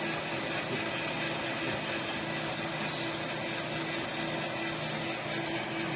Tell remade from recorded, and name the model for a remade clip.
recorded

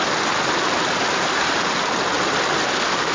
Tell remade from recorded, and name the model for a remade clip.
recorded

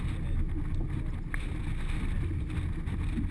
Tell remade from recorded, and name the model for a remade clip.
recorded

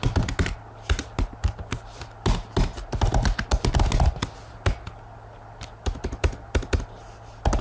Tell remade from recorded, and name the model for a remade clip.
recorded